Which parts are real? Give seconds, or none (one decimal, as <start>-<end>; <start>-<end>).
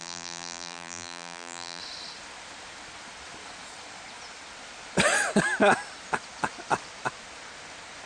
1.8-8.1